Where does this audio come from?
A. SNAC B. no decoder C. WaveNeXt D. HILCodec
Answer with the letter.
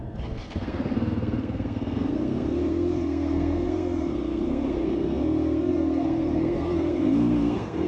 A